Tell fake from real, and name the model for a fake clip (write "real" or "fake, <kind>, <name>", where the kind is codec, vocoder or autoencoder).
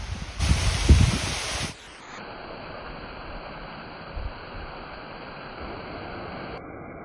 real